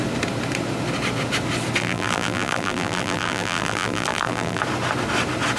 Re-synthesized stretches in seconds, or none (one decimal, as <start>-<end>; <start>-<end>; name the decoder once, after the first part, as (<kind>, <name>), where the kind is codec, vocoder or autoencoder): 1.8-4.6 (vocoder, BigVGAN v2)